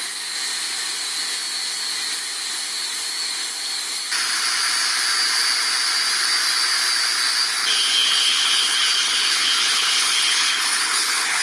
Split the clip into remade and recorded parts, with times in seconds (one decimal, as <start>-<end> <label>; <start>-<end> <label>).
0.0-7.6 recorded; 7.6-11.4 remade